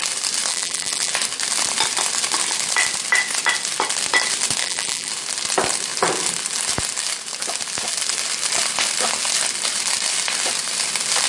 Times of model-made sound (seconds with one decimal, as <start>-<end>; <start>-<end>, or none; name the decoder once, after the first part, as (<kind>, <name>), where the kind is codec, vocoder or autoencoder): 0.5-1.1 (vocoder, BigVGAN v2); 4.6-5.1